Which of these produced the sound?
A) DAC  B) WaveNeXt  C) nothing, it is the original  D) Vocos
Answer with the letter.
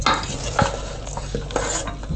C